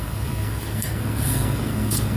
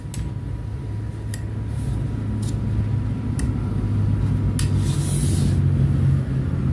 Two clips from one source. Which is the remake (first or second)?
first